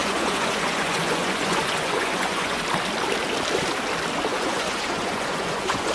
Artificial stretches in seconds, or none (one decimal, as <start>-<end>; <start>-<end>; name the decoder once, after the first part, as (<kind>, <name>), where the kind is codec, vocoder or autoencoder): 0.0-2.6 (vocoder, Vocos); 4.3-5.9